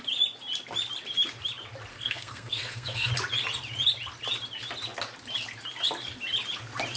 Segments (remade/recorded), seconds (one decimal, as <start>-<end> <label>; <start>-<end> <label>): 0.0-1.9 recorded; 1.9-3.1 remade; 3.1-7.0 recorded